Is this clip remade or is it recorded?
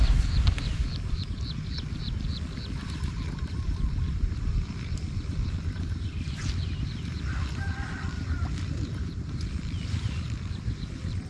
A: recorded